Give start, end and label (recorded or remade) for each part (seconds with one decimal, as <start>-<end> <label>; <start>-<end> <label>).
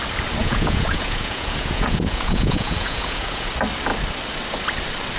0.0-0.4 recorded; 0.4-3.5 remade; 3.5-5.2 recorded